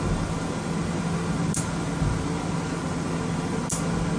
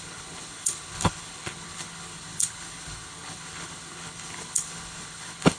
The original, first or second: first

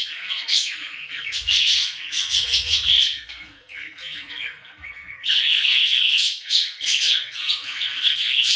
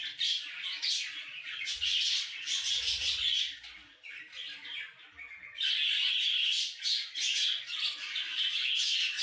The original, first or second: second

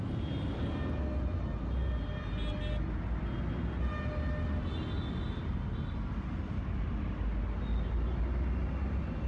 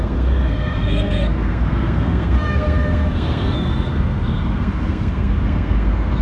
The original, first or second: first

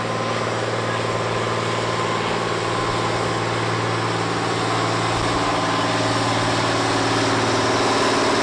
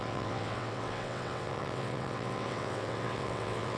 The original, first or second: first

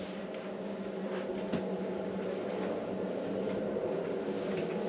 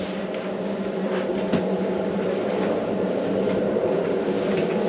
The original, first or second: first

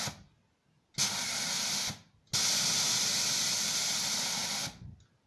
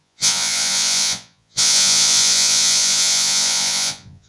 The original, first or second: first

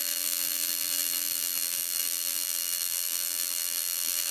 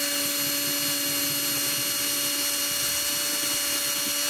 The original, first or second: second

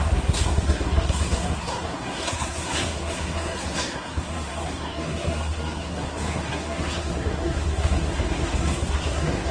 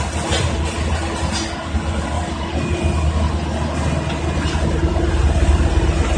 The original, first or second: second